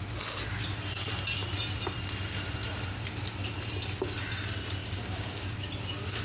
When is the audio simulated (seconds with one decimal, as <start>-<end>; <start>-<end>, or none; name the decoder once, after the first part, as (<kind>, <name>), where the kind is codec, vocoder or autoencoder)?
4.8-5.7 (codec, DAC)